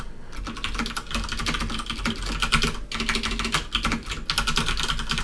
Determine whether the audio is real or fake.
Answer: real